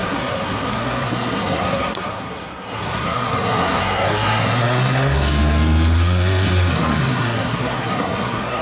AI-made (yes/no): yes